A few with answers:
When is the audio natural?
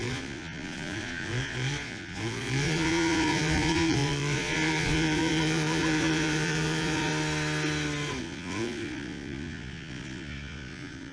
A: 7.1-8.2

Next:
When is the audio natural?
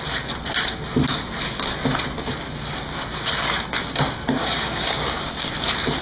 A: 0.0-4.4; 5.5-6.0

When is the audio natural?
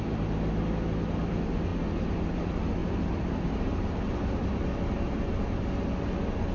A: 0.0-2.8; 4.5-6.5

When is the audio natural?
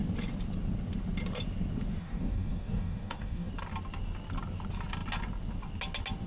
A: 0.0-2.0; 3.5-6.3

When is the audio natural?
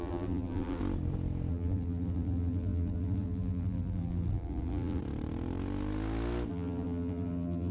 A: 0.8-1.5; 5.0-6.5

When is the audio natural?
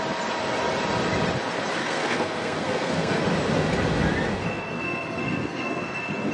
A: 0.0-1.8; 3.2-4.4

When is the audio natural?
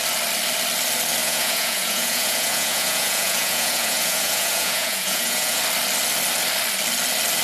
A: 0.0-1.2; 5.6-7.4